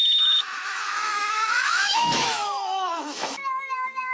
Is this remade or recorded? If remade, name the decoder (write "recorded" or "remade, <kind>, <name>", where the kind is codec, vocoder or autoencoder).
remade, autoencoder, DAC-VAE